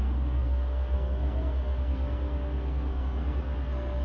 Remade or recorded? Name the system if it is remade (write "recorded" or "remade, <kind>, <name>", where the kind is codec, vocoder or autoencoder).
remade, codec, SNAC